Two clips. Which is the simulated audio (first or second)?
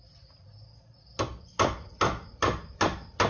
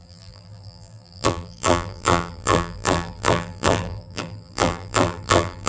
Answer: second